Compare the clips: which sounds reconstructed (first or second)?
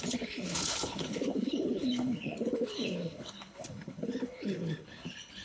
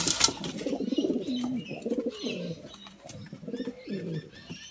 first